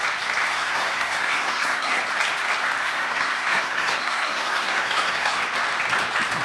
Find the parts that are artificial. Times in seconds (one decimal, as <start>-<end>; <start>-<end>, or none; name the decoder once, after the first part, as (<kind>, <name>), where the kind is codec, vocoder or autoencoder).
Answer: 0.5-2.0 (codec, SNAC); 2.8-5.4